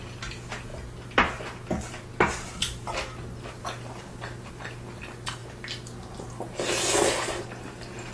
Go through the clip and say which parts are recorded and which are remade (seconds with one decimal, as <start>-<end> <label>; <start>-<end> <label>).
0.0-8.1 recorded